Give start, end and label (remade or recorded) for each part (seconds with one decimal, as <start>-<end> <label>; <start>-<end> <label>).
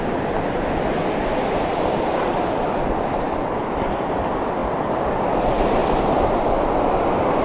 0.0-5.8 recorded; 5.8-6.8 remade; 6.8-7.4 recorded